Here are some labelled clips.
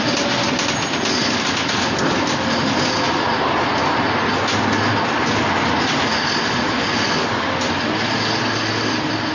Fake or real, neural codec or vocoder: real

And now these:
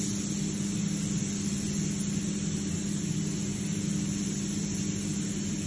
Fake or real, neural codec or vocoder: real